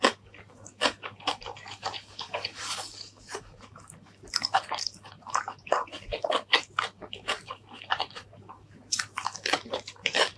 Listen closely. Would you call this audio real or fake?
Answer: fake